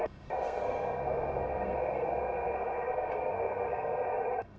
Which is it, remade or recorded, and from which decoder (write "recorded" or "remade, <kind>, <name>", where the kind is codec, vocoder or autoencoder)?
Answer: remade, codec, SNAC